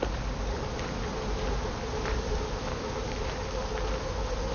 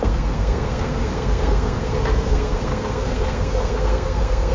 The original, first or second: first